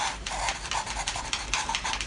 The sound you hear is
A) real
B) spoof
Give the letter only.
A